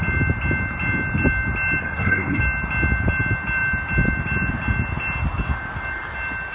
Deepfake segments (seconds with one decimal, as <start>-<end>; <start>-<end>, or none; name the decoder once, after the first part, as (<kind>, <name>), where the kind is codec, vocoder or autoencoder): 1.8-2.4 (codec, SNAC)